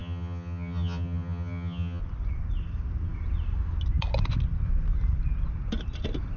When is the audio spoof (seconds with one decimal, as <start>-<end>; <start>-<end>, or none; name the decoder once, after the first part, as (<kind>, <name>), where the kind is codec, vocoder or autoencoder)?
0.0-2.0 (vocoder, HiFi-GAN)